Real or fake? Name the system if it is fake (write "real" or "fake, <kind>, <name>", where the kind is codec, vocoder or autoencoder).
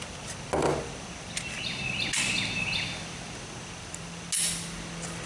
real